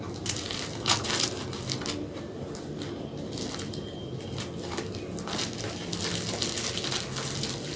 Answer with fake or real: real